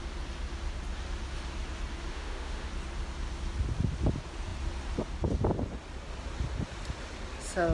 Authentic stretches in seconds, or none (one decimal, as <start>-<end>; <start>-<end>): 0.0-2.1; 2.7-7.7

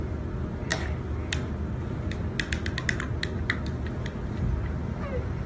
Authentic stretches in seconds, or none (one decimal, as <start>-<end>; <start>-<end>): 0.0-5.5

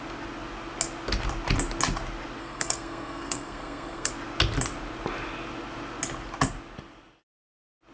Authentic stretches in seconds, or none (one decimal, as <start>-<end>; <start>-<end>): 0.0-2.4; 4.1-7.9

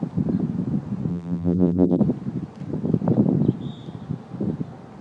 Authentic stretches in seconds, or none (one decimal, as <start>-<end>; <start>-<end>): 0.0-1.1; 2.0-5.0

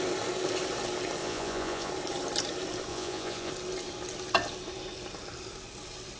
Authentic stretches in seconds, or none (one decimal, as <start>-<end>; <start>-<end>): 0.0-1.2; 1.9-2.9; 3.5-6.2

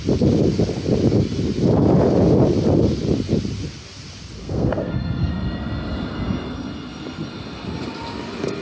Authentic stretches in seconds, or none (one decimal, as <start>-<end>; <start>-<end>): 0.0-4.4; 5.3-8.6

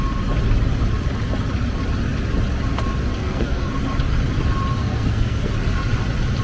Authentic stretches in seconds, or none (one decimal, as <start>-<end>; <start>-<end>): 0.0-3.1; 3.7-4.8; 5.5-6.4